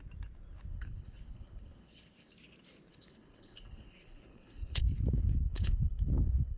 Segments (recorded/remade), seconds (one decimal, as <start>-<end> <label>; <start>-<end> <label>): 0.0-0.7 recorded; 0.7-2.3 remade; 2.3-2.9 recorded; 2.9-6.6 remade